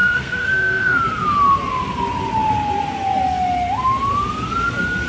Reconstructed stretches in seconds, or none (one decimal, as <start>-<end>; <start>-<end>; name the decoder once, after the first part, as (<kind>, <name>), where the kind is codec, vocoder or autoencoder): 0.0-1.0 (codec, SNAC)